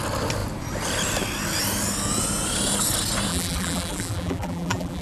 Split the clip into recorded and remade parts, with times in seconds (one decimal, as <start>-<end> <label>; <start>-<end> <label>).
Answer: 0.0-3.3 recorded; 3.3-5.0 remade

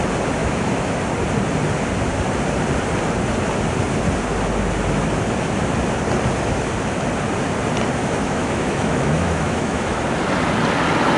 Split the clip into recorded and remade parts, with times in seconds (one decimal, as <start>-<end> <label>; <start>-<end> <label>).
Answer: 0.0-0.4 recorded; 0.4-1.0 remade; 1.0-8.0 recorded; 8.0-10.0 remade; 10.0-11.2 recorded

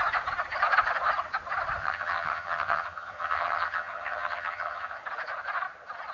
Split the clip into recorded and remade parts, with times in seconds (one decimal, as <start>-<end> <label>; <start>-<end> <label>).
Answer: 0.0-1.8 recorded; 1.8-5.0 remade; 5.0-6.1 recorded